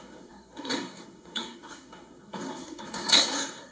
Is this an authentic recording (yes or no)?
no